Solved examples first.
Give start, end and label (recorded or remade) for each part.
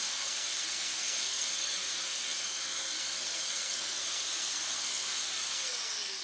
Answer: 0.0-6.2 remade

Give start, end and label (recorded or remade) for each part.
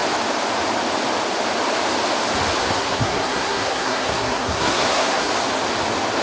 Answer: 0.0-2.6 recorded; 2.6-5.3 remade; 5.3-6.2 recorded